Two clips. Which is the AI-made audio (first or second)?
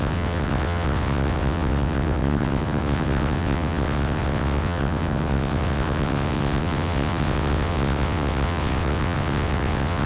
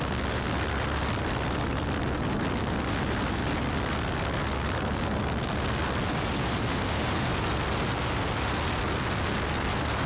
first